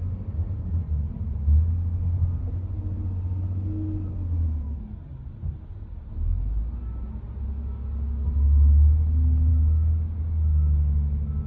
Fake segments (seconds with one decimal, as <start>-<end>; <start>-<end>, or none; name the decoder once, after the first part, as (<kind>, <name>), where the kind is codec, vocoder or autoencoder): none